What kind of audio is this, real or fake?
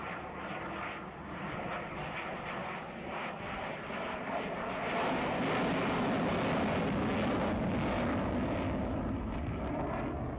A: real